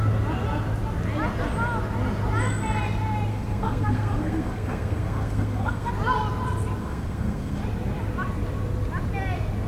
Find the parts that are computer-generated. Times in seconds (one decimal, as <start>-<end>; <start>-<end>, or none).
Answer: 3.3-5.9; 6.8-7.6